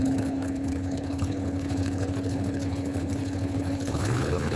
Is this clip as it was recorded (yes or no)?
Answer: no